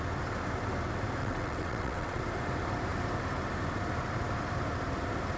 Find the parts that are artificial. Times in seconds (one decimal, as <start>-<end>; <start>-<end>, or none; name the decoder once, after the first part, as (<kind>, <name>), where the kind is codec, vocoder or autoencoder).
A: 1.2-2.2 (vocoder, WaveNeXt)